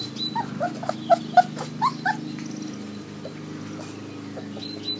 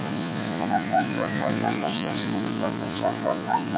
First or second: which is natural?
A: first